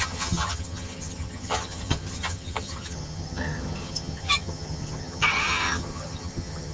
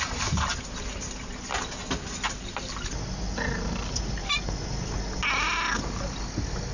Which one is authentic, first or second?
second